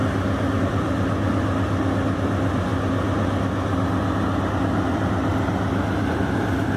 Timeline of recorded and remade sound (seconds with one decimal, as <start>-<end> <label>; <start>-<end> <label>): 0.0-0.6 recorded; 0.6-2.7 remade; 2.7-4.4 recorded; 4.4-5.3 remade; 5.3-6.1 recorded; 6.1-6.8 remade